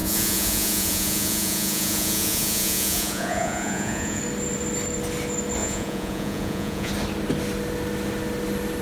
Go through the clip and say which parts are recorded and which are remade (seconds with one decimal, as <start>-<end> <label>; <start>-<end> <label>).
0.0-4.2 remade; 4.2-5.6 recorded; 5.6-6.9 remade; 6.9-8.8 recorded

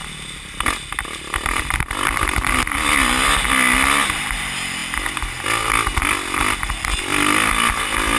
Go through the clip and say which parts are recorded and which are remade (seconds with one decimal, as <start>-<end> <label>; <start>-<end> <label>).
0.0-8.2 recorded

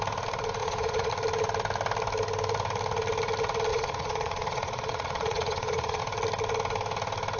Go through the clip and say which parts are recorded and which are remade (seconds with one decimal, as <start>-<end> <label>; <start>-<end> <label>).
0.0-0.6 recorded; 0.6-1.1 remade; 1.1-3.7 recorded; 3.7-6.0 remade; 6.0-7.4 recorded

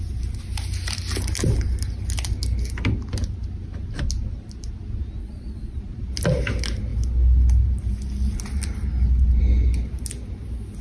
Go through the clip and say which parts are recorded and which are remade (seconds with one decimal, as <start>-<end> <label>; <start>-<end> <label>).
0.0-5.2 recorded; 5.2-5.8 remade; 5.8-10.8 recorded

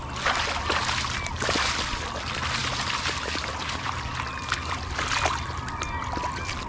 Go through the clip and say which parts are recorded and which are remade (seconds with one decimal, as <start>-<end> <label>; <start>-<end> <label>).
0.0-6.7 recorded

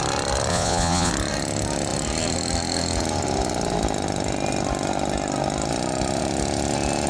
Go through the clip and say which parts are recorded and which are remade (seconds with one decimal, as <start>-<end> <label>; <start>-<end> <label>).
0.0-0.5 recorded; 0.5-1.1 remade; 1.1-7.1 recorded

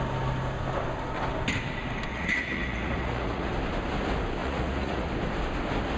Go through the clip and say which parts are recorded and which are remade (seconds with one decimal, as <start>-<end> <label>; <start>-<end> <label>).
0.0-2.1 recorded; 2.1-3.5 remade; 3.5-4.4 recorded; 4.4-5.1 remade; 5.1-6.0 recorded

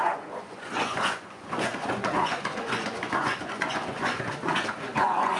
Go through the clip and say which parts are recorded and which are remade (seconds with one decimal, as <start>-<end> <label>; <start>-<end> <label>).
0.0-5.4 remade